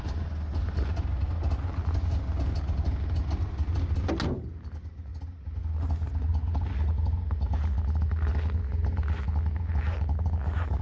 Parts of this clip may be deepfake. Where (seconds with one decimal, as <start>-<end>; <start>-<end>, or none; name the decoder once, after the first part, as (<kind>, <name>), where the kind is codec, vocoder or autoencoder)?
none